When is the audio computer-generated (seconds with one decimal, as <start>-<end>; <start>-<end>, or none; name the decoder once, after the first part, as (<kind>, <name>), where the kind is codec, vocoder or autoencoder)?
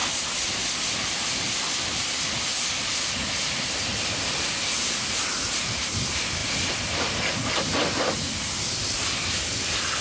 1.1-2.5 (vocoder, BigVGAN v2); 3.1-6.4; 7.4-10.0